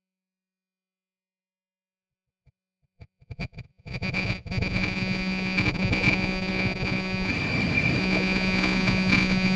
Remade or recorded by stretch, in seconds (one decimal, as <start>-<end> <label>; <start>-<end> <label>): 0.0-7.3 remade; 7.3-8.0 recorded; 8.0-9.6 remade